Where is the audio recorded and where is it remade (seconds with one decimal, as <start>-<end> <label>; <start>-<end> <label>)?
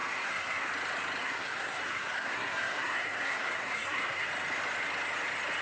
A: 0.0-0.7 remade; 0.7-1.2 recorded; 1.2-4.3 remade; 4.3-5.6 recorded